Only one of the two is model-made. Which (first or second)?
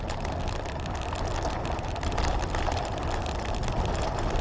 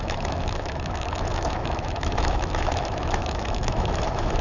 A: second